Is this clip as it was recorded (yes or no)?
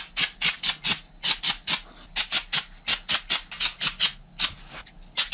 yes